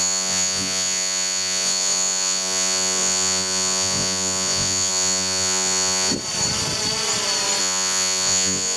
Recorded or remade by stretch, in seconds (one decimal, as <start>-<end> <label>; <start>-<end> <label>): 0.0-6.1 remade; 6.1-7.6 recorded; 7.6-8.8 remade